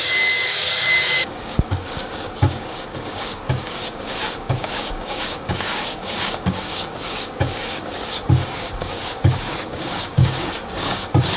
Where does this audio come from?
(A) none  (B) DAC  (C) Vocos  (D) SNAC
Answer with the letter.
B